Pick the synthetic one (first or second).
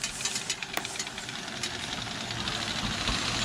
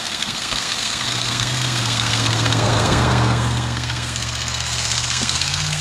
second